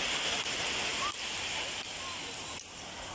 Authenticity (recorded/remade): recorded